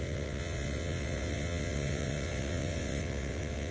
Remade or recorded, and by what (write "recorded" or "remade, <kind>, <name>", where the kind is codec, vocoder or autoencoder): remade, vocoder, WaveNeXt